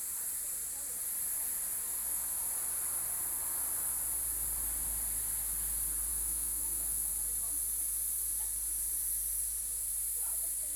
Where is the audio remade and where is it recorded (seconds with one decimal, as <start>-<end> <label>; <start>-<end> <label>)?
0.0-2.0 recorded; 2.0-2.5 remade; 2.5-6.1 recorded; 6.1-7.1 remade; 7.1-10.8 recorded